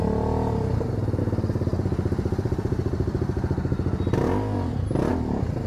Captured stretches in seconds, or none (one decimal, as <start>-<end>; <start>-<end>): 0.0-1.7; 2.6-5.1